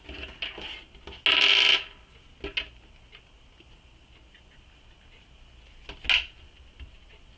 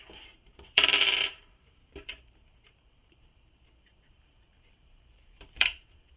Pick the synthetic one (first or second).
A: second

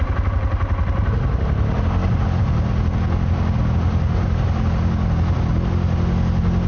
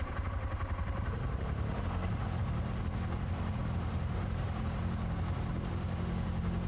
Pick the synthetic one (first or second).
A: second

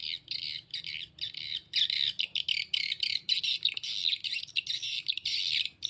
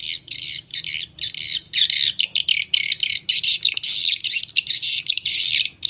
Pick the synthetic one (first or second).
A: second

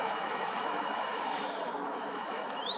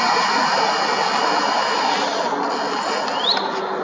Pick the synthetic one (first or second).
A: first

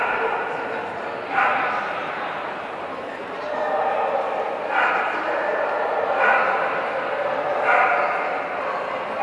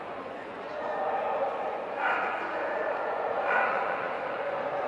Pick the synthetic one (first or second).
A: second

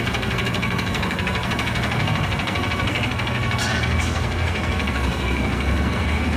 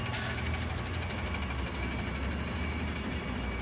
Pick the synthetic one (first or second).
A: first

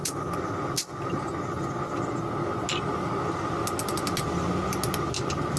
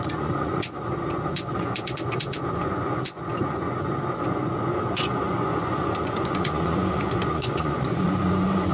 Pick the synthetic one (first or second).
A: second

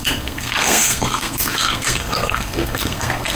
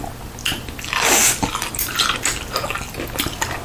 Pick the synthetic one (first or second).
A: first